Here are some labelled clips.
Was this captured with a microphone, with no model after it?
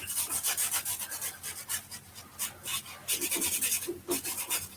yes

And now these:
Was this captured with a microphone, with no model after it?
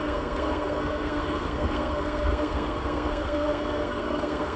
no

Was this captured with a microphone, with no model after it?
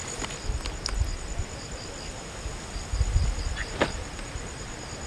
yes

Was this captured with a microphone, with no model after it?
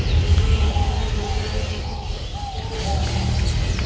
yes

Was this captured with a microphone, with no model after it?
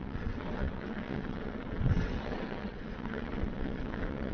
no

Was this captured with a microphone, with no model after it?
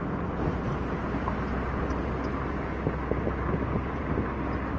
yes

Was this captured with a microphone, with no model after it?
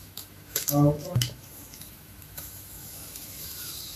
no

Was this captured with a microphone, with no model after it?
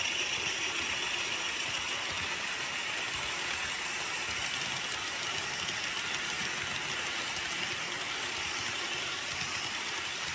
yes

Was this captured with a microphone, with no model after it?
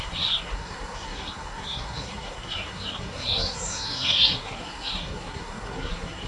no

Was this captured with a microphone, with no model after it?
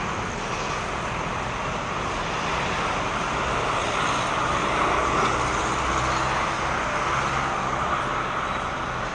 yes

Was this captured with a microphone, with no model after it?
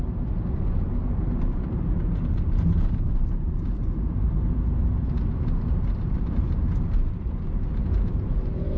no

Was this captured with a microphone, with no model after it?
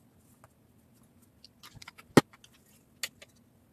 yes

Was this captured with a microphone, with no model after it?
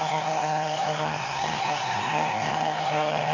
no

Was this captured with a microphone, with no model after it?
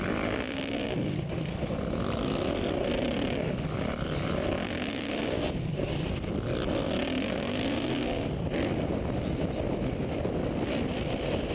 yes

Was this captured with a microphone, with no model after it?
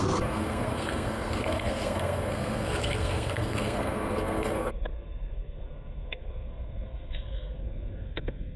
no